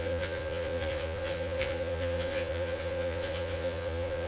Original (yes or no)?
no